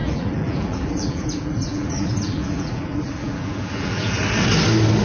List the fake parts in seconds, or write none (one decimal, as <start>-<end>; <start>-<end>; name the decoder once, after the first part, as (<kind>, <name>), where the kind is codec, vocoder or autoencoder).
0.0-4.2 (vocoder, BigVGAN v2)